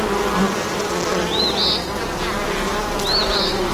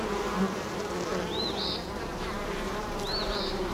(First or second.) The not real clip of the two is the second